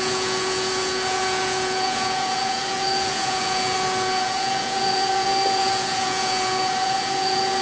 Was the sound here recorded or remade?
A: remade